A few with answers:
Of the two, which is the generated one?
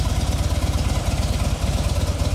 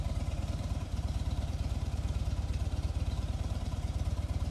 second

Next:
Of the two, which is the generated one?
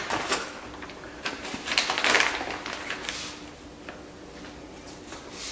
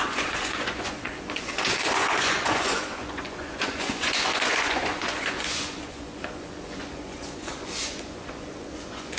second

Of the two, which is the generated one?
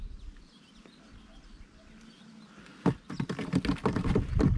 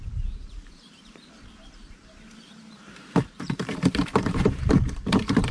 second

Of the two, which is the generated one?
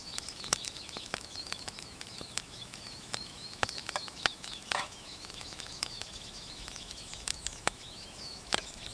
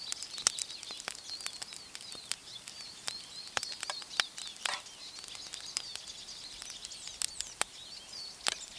first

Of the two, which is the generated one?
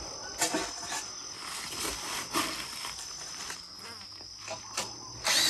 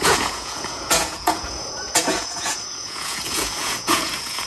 second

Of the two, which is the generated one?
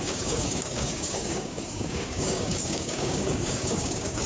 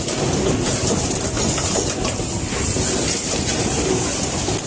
first